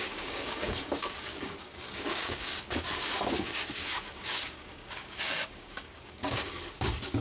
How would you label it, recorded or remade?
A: remade